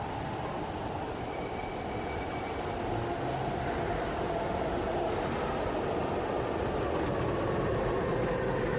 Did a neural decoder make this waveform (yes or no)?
no